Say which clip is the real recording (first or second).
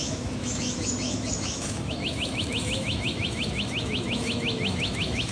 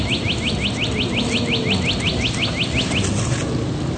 second